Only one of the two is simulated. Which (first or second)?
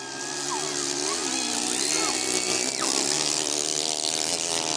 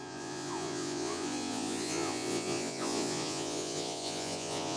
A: second